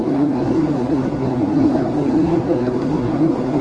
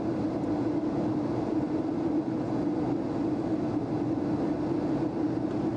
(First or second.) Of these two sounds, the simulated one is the first